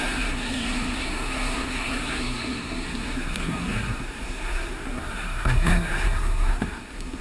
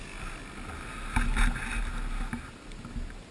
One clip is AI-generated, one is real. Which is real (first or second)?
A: second